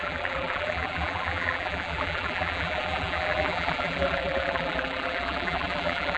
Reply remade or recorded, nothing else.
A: remade